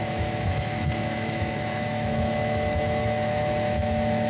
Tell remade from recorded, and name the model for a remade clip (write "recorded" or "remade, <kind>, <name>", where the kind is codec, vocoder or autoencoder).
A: remade, autoencoder, DAC-VAE